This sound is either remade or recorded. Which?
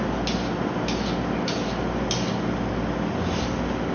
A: recorded